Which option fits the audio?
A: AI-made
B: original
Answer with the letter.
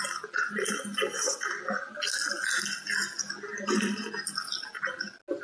B